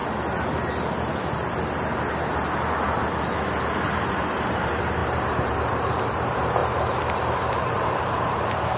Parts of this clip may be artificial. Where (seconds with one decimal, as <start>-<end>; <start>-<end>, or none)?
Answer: 4.1-8.8